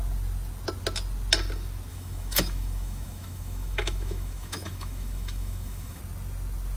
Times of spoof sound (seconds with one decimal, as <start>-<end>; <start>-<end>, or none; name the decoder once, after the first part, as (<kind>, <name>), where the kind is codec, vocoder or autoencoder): 1.9-6.0 (autoencoder, DAC-VAE)